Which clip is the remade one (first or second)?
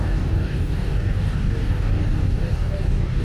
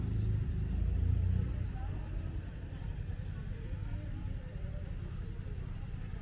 first